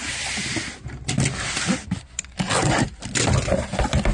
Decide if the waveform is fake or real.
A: real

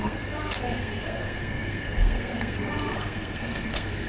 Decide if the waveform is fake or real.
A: fake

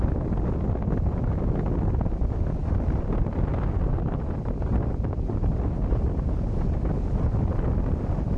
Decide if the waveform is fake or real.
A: real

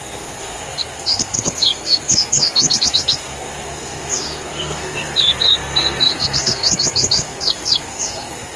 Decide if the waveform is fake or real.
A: fake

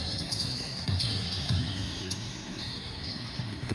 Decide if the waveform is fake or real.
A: fake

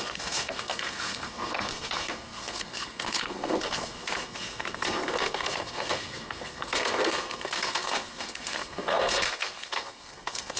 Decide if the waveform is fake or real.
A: fake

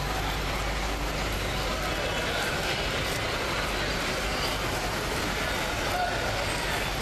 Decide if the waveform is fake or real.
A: real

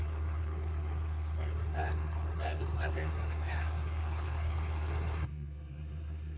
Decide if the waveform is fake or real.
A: fake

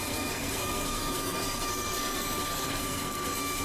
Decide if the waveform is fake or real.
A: fake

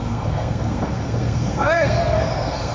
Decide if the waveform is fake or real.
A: fake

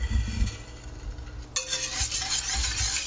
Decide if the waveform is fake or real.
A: real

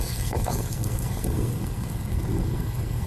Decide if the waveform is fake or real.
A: fake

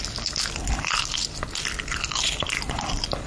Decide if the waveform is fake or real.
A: real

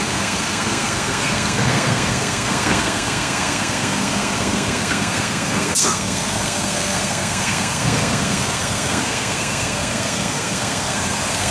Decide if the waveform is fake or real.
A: fake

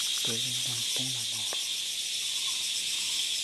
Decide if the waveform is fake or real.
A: real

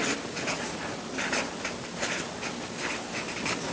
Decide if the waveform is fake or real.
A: real